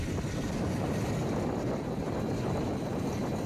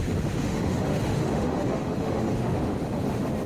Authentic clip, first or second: first